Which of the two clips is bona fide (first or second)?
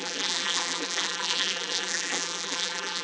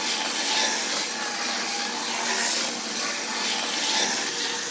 second